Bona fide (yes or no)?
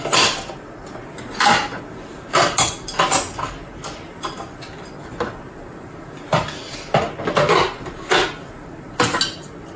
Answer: yes